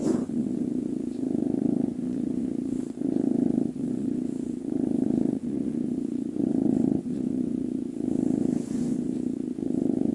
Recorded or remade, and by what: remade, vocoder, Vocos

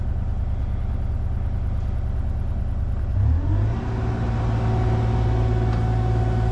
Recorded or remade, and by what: recorded